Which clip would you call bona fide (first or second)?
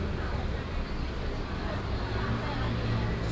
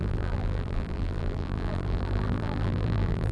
first